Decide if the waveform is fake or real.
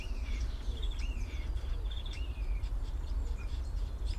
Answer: fake